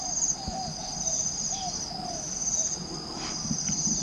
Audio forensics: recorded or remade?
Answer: recorded